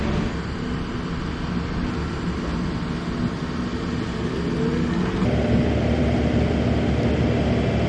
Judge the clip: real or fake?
real